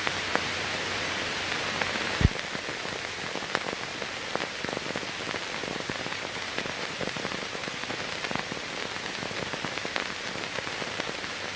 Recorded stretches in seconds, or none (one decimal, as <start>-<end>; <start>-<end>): 0.0-5.6; 8.1-11.6